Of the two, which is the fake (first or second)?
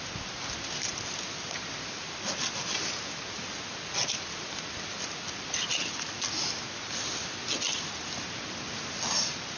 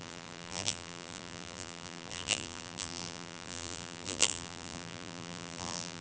second